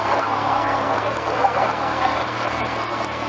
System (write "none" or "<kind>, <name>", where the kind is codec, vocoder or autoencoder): codec, SNAC